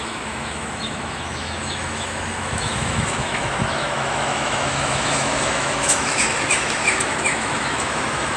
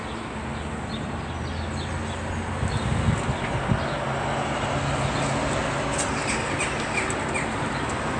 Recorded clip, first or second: second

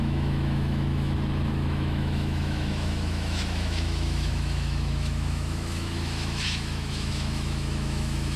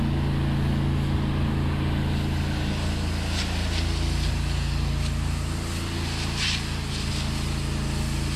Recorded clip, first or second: second